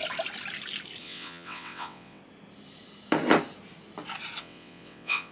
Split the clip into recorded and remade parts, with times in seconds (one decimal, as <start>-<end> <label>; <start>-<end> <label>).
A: 0.0-1.0 recorded; 1.0-2.2 remade; 2.2-4.4 recorded; 4.4-5.3 remade